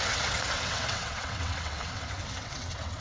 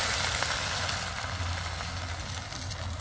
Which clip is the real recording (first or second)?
second